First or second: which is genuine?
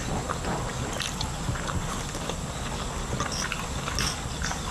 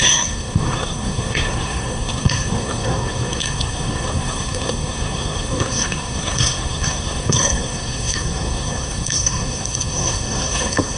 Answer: first